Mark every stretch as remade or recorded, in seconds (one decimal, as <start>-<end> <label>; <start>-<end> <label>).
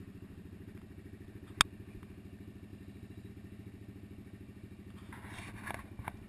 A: 0.0-2.7 recorded; 2.7-3.3 remade; 3.3-6.3 recorded